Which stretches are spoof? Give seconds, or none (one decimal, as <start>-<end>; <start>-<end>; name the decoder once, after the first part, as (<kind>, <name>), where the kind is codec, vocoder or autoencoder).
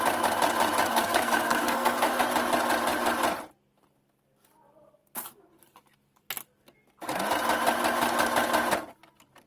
0.9-2.2 (codec, SNAC)